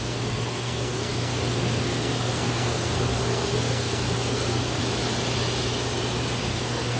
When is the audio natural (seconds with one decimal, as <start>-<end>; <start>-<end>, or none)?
4.8-6.4